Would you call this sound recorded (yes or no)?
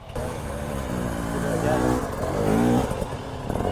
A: yes